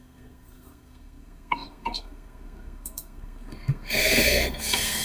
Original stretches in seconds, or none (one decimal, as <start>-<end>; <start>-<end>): none